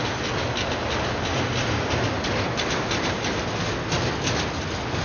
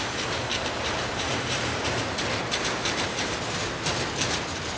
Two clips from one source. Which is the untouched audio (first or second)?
first